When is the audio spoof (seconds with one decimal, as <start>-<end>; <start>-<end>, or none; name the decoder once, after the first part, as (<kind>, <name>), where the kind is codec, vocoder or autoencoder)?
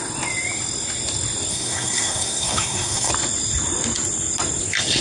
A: 1.5-3.1 (codec, SNAC)